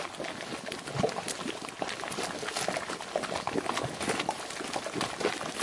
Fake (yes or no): no